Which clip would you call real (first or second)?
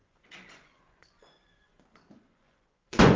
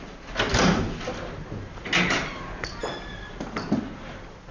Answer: second